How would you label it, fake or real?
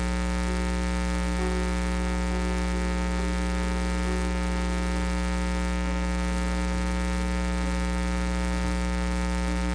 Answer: real